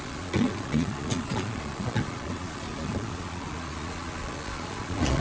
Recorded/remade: remade